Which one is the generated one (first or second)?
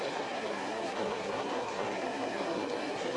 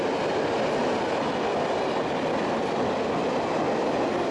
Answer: first